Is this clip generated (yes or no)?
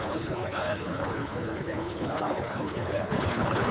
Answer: yes